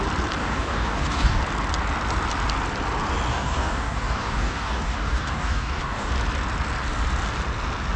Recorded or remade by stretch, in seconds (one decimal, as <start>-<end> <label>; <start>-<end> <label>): 0.0-0.4 recorded; 0.4-1.4 remade; 1.4-3.3 recorded; 3.3-6.1 remade; 6.1-8.0 recorded